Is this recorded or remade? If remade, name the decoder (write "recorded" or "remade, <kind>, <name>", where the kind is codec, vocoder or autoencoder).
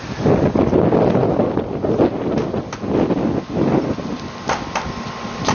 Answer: recorded